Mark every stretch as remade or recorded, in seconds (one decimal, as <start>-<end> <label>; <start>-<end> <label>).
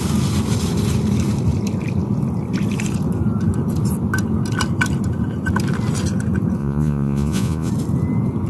0.0-6.6 recorded; 6.6-7.7 remade; 7.7-8.5 recorded